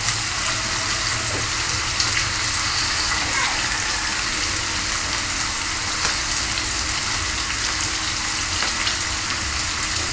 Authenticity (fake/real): real